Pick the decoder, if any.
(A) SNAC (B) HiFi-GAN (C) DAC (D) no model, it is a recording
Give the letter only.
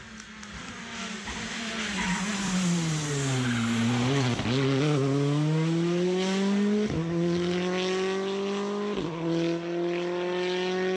D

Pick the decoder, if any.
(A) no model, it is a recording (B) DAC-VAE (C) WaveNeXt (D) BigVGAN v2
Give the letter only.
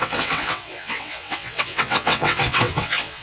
C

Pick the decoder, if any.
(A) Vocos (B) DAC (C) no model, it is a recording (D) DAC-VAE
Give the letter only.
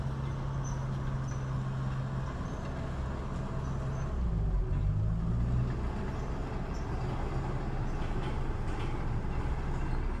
C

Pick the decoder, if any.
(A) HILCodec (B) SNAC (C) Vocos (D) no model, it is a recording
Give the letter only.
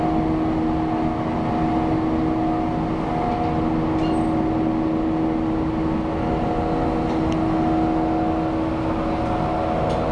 D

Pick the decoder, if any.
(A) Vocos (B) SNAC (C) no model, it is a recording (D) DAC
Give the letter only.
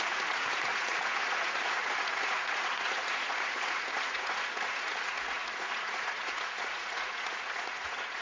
A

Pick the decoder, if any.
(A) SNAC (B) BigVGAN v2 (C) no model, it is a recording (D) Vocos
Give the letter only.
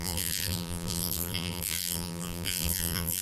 B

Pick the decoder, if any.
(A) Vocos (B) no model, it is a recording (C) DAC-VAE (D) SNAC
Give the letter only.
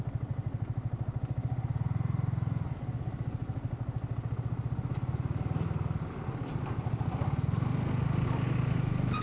B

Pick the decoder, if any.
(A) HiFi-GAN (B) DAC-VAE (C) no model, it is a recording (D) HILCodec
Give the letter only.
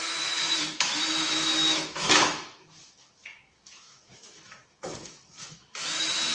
B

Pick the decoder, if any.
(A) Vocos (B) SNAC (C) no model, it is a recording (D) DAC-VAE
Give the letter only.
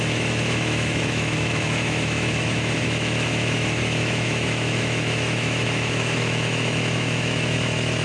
D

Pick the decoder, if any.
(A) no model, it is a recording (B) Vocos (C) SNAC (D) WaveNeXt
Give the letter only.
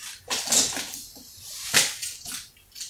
A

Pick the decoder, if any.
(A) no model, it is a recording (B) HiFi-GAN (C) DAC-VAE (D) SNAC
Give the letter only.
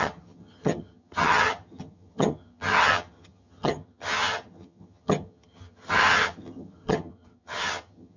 B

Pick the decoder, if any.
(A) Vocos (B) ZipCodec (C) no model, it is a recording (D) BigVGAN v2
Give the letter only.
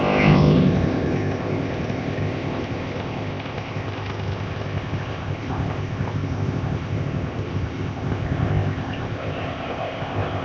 B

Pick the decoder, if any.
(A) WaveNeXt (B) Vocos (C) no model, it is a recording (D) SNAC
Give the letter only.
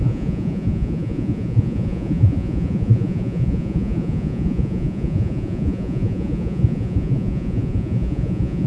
B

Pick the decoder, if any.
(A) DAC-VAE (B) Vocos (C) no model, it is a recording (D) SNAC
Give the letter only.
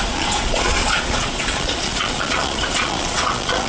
B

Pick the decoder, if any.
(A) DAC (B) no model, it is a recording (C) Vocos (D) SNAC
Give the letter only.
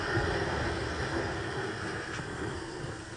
D